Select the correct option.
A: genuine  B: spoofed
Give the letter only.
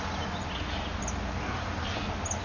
A